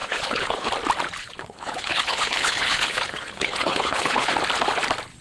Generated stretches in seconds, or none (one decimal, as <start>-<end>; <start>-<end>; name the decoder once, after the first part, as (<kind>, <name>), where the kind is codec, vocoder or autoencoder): 0.0-0.7 (codec, HILCodec); 1.2-4.3